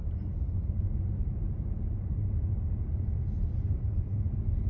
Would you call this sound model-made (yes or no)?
no